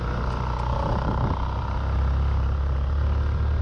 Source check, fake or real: real